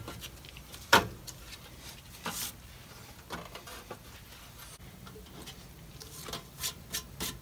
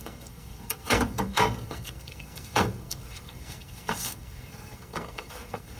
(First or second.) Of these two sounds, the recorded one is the first